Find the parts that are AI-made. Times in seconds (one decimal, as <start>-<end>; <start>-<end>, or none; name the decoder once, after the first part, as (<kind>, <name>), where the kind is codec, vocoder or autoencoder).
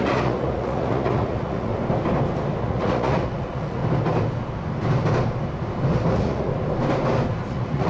0.0-1.7 (vocoder, Vocos); 2.6-3.8; 6.1-6.5; 7.4-7.9